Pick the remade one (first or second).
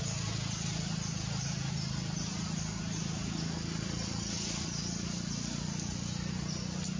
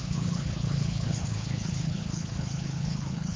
second